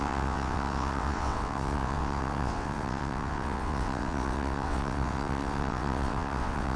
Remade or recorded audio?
remade